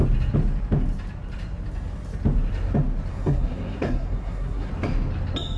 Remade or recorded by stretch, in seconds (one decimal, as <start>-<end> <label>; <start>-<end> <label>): 0.0-3.1 recorded; 3.1-4.7 remade; 4.7-5.6 recorded

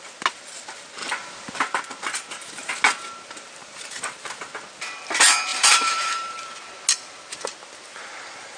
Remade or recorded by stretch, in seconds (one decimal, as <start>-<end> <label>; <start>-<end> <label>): 0.0-3.6 recorded; 3.6-4.5 remade; 4.5-5.5 recorded; 5.5-6.5 remade; 6.5-8.6 recorded